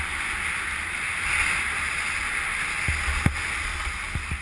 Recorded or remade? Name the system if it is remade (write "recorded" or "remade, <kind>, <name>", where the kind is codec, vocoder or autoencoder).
recorded